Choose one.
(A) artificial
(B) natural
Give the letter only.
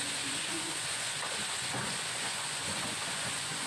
A